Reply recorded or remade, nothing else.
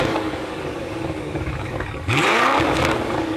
remade